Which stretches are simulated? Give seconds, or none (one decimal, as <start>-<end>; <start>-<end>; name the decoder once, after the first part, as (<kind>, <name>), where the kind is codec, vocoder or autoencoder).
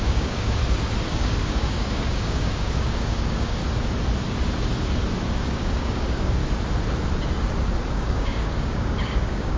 0.0-0.6 (codec, DAC); 1.1-3.6; 5.3-6.4; 7.9-9.6